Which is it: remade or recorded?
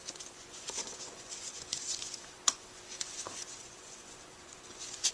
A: remade